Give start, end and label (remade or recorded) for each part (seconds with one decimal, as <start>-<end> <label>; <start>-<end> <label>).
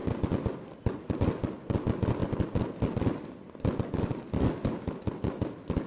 0.0-5.9 recorded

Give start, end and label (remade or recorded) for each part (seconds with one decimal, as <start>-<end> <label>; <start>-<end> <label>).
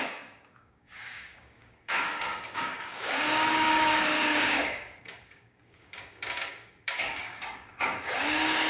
0.0-8.7 remade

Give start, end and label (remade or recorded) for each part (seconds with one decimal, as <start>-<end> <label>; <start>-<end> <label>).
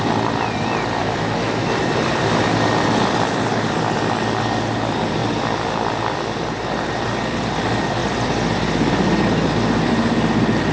0.0-1.0 recorded; 1.0-1.7 remade; 1.7-10.7 recorded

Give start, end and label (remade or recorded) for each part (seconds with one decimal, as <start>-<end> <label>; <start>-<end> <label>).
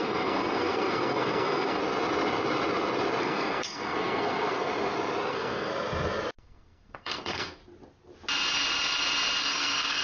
0.0-1.8 remade; 1.8-3.2 recorded; 3.2-4.7 remade; 4.7-5.3 recorded; 5.3-5.7 remade; 5.7-6.4 recorded; 6.4-7.6 remade; 7.6-9.4 recorded; 9.4-10.0 remade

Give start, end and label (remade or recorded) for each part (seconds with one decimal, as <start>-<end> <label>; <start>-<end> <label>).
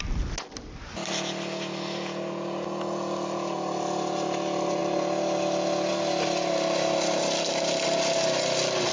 0.0-8.9 recorded